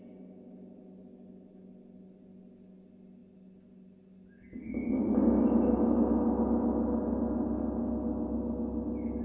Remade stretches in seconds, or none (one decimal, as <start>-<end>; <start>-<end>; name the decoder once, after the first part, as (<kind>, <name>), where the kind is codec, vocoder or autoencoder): none